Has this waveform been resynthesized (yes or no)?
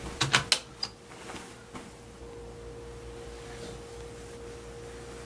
no